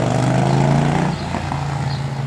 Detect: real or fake real